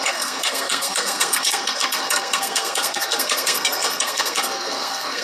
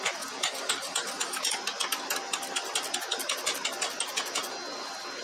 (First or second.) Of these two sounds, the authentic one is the second